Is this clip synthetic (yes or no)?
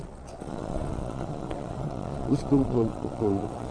yes